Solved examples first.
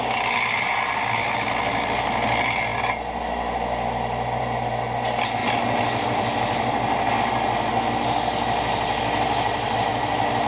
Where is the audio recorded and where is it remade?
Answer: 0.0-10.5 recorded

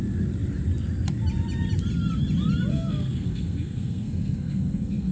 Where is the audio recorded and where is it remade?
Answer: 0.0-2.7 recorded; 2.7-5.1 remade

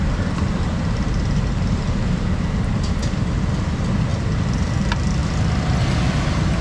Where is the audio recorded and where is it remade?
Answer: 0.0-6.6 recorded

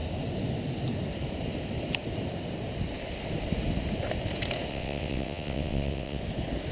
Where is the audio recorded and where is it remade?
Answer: 0.0-4.7 recorded; 4.7-6.2 remade; 6.2-6.7 recorded

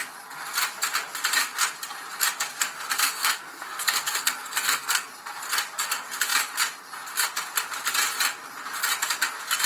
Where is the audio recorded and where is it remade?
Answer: 0.0-2.6 recorded; 2.6-5.1 remade; 5.1-9.7 recorded